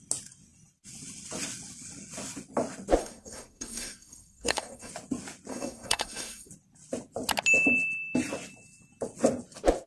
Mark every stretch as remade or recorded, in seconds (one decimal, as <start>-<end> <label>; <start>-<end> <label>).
0.0-3.0 recorded; 3.0-4.9 remade; 4.9-5.5 recorded; 5.5-6.5 remade; 6.5-9.9 recorded